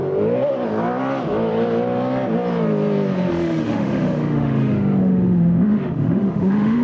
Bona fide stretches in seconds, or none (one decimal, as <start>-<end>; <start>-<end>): 0.0-3.3

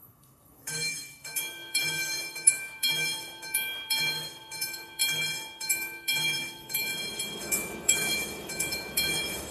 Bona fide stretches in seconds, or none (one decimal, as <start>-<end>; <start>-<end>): 5.0-5.6; 6.9-7.4

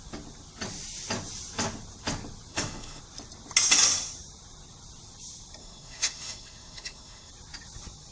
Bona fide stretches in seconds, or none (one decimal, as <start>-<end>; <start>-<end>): 0.0-2.5; 3.0-5.6; 7.3-8.1

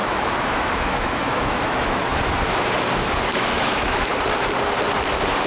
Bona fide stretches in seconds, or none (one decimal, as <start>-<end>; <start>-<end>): 2.0-3.3; 4.1-5.5

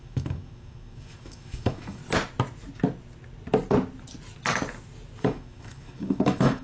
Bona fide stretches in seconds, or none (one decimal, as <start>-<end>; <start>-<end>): 2.0-5.2